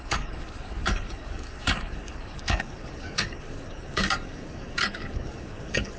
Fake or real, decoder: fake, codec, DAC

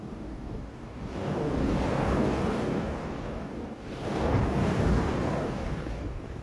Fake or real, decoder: fake, codec, DAC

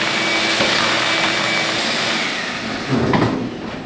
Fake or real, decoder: real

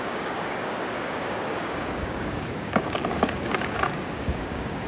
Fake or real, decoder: fake, codec, DAC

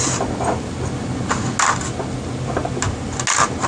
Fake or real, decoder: real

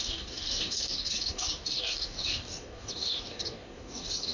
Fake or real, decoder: fake, codec, DAC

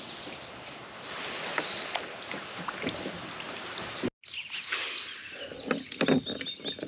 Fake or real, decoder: real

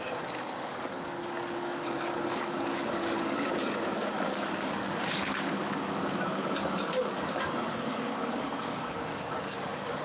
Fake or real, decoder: fake, codec, DAC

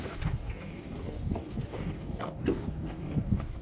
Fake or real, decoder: fake, codec, DAC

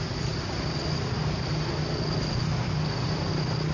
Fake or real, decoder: real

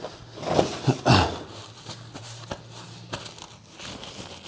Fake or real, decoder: real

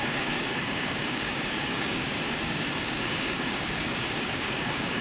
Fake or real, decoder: fake, codec, DAC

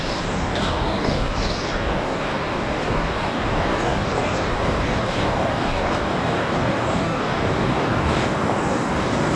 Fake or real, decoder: fake, codec, DAC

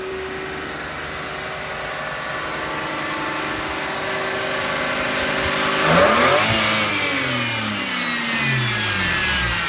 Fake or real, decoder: real